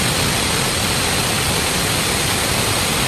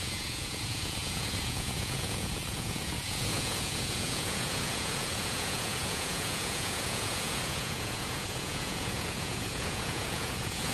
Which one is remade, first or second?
second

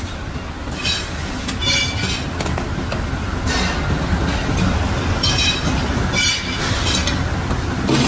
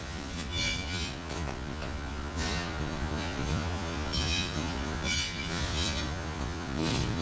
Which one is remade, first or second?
second